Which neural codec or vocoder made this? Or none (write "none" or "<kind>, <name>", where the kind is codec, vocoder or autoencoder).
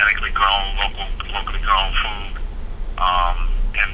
none